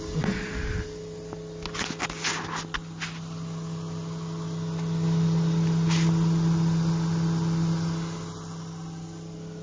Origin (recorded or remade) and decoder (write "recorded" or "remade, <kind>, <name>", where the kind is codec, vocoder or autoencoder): recorded